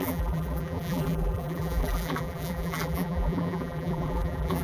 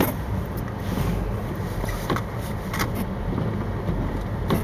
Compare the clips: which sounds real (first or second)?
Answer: second